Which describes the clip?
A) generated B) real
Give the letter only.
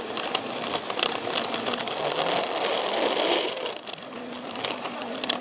B